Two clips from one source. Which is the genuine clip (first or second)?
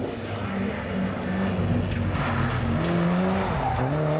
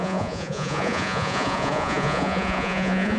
first